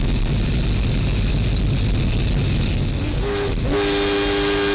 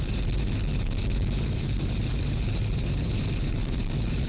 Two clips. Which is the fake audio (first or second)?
second